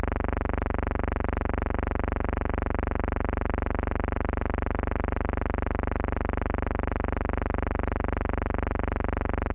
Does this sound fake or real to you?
real